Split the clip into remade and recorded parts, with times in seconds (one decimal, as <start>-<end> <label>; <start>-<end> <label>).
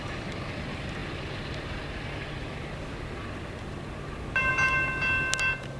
0.0-5.8 recorded